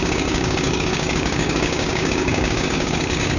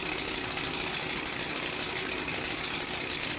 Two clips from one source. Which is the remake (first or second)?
first